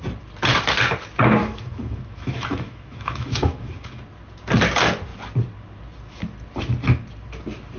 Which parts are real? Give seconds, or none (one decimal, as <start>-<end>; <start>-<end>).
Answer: 0.0-1.4; 4.0-7.8